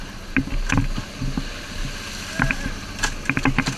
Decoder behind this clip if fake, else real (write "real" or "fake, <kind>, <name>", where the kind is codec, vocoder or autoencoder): real